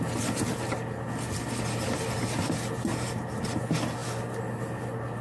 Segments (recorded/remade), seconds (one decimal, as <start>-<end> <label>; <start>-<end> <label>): 0.0-2.9 recorded; 2.9-3.6 remade; 3.6-5.2 recorded

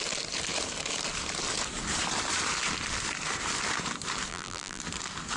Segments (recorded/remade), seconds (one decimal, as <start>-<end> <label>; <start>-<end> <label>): 0.0-4.3 recorded; 4.3-4.8 remade; 4.8-5.4 recorded

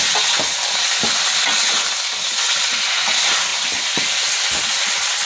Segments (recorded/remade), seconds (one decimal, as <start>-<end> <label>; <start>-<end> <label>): 0.0-5.3 recorded

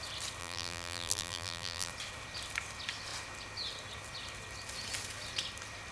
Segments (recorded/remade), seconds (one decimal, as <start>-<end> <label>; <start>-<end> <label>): 0.0-0.4 recorded; 0.4-1.9 remade; 1.9-5.9 recorded

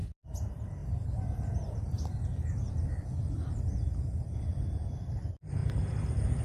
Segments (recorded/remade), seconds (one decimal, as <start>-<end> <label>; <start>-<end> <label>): 0.0-0.8 remade; 0.8-2.7 recorded; 2.7-5.6 remade; 5.6-6.4 recorded

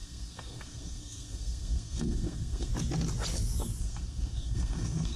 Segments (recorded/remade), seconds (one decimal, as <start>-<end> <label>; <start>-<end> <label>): 0.0-2.7 remade; 2.7-3.8 recorded; 3.8-5.2 remade

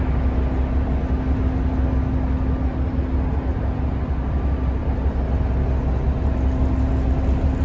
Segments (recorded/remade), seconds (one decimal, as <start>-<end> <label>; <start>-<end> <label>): 0.0-7.6 recorded